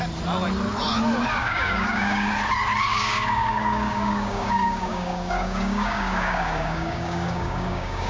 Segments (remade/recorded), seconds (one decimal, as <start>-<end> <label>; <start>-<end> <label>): 0.0-1.4 recorded; 1.4-2.3 remade; 2.3-2.9 recorded; 2.9-8.1 remade